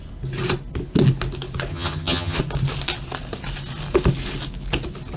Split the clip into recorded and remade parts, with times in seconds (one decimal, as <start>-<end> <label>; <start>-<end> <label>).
0.0-1.7 recorded; 1.7-2.4 remade; 2.4-5.2 recorded